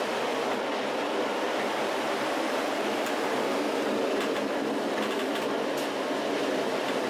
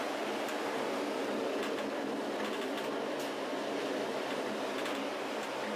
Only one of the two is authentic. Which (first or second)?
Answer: second